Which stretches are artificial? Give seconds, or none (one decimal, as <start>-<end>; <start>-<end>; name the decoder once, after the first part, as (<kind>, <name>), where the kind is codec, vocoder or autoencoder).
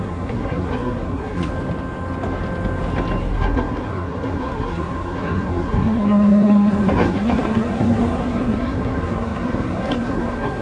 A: 0.0-1.5 (codec, SNAC); 3.2-10.6